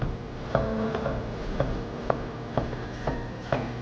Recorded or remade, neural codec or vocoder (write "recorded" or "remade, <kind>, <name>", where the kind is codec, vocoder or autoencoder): recorded